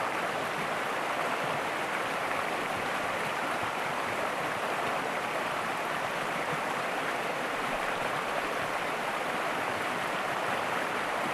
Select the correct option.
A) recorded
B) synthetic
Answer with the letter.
B